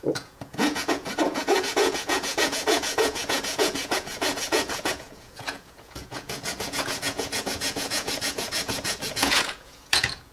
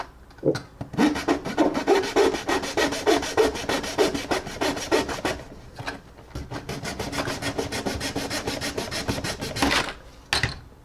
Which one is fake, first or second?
first